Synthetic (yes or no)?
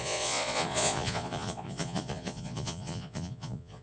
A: yes